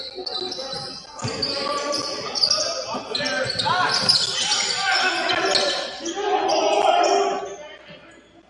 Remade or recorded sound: recorded